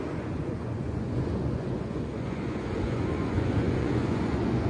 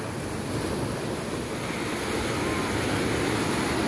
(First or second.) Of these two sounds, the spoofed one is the first